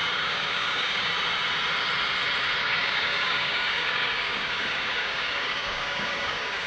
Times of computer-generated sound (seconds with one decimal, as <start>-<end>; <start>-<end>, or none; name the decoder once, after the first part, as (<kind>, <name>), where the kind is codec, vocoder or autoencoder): 0.0-1.1 (codec, DAC); 2.6-6.7

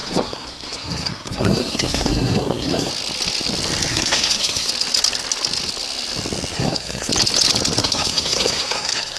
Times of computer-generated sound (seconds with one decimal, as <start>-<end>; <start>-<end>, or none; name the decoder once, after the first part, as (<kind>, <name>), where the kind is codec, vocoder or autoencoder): 0.0-2.9 (codec, SNAC); 3.9-4.7; 6.5-7.1; 7.8-9.2

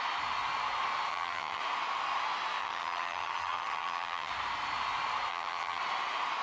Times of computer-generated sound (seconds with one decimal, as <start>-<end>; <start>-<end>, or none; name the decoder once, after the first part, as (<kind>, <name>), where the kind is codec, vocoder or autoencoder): 1.1-1.6 (vocoder, HiFi-GAN); 2.6-4.3; 5.3-5.8

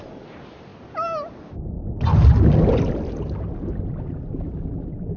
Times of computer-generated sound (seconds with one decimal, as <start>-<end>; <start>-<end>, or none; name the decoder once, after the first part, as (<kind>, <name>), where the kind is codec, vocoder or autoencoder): none

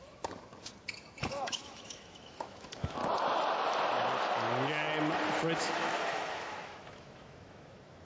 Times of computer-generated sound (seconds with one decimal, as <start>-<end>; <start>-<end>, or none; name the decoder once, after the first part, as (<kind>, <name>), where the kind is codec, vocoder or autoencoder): 0.0-0.5 (autoencoder, DAC-VAE); 1.3-3.0; 5.6-8.0

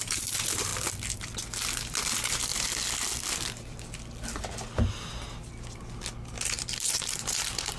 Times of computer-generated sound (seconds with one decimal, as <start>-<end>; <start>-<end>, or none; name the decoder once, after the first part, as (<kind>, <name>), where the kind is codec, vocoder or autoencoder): 0.0-0.7 (vocoder, BigVGAN v2); 2.0-2.5; 6.6-7.8